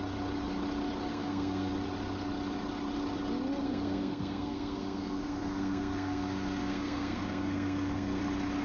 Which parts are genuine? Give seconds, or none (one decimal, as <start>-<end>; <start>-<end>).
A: 0.0-1.1; 1.7-3.6; 8.2-8.6